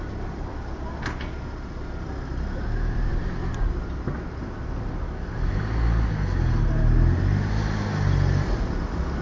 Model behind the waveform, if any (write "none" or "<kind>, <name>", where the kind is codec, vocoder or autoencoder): none